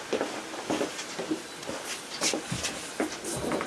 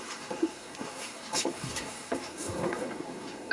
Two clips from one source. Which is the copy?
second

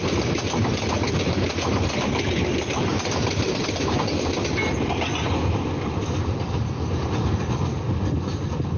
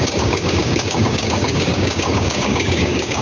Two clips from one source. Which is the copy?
second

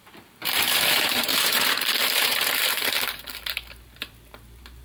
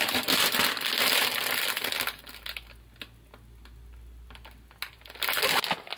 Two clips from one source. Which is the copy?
first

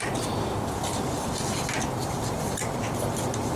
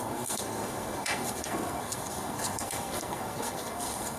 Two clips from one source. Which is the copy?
second